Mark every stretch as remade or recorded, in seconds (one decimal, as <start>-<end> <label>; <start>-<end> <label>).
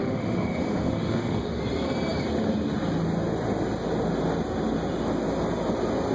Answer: 0.0-1.6 remade; 1.6-6.1 recorded